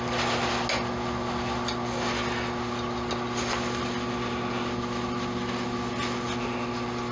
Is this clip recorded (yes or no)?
yes